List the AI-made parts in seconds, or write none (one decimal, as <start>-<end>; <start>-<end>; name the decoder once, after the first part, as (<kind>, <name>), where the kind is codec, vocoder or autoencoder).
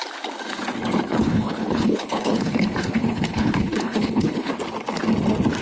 1.1-4.5 (codec, HILCodec)